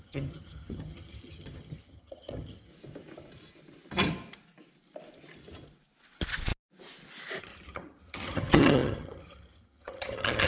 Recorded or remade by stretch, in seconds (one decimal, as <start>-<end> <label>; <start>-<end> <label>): 0.0-2.7 remade; 2.7-7.4 recorded; 7.4-10.5 remade